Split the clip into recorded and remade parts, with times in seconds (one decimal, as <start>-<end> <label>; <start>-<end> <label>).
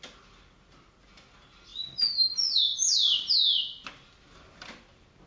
0.0-5.3 recorded